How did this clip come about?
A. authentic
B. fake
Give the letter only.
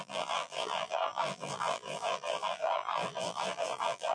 B